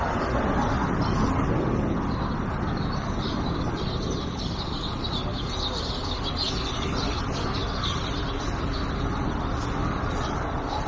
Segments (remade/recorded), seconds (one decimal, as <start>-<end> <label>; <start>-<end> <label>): 0.0-10.9 recorded